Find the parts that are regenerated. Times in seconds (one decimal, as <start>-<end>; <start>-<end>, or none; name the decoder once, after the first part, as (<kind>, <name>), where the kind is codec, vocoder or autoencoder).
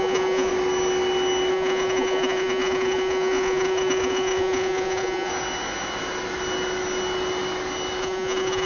0.0-0.5 (vocoder, Vocos); 1.5-5.3; 8.0-8.7